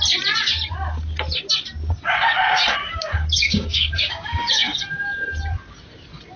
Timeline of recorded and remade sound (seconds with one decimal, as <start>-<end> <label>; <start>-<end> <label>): 0.0-2.8 recorded; 2.8-4.8 remade; 4.8-6.4 recorded